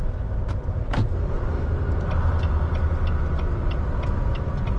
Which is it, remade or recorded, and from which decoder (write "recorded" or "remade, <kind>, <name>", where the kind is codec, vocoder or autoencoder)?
recorded